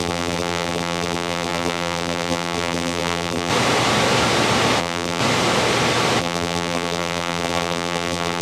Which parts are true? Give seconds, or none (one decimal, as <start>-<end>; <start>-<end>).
3.5-4.8; 5.2-6.2

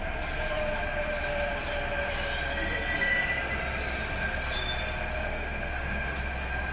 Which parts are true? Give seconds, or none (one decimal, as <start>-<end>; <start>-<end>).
0.0-5.2; 6.2-6.7

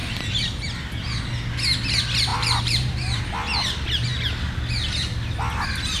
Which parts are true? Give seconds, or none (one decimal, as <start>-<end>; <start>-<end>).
0.0-2.3; 3.2-6.0

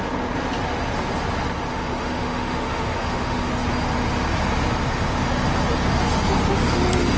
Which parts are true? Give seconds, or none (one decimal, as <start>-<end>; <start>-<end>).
0.0-1.7; 3.5-7.2

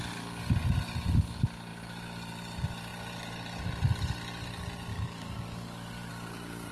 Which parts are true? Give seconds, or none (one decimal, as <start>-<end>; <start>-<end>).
0.0-4.9; 6.1-6.7